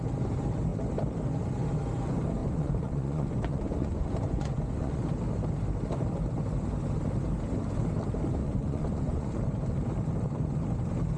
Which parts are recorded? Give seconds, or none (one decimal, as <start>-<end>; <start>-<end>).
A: 0.0-2.4; 5.0-8.4; 9.3-11.2